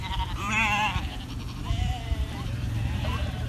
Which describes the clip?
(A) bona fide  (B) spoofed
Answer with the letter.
B